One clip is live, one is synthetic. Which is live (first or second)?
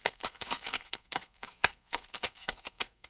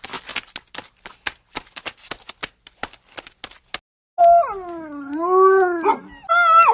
second